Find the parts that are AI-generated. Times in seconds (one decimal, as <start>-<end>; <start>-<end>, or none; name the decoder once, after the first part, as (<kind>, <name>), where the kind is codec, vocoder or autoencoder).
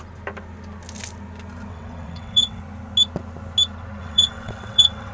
1.7-2.6 (vocoder, WaveNeXt); 4.0-5.1